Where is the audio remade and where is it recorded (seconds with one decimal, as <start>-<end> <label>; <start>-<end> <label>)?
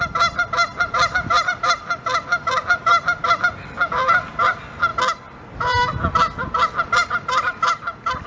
0.0-4.9 remade; 4.9-5.5 recorded; 5.5-5.9 remade; 5.9-7.3 recorded; 7.3-8.3 remade